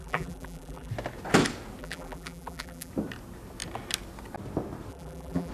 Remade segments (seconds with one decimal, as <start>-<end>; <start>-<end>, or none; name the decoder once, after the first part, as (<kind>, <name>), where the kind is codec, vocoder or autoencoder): 0.0-0.9 (vocoder, BigVGAN v2); 1.8-2.9; 4.9-5.5